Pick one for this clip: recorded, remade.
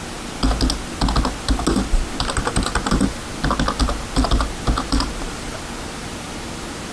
recorded